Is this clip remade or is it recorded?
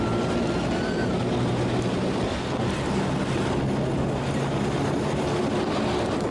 recorded